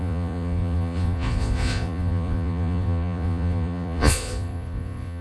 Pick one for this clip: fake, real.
fake